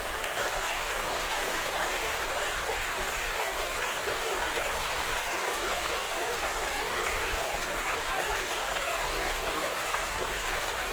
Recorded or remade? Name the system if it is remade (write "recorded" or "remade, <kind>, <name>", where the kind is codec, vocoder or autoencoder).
remade, codec, DAC